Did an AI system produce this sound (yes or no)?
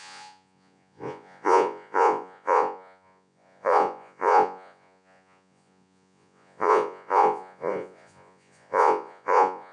yes